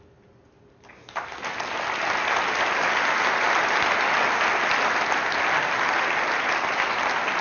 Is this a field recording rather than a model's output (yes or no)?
yes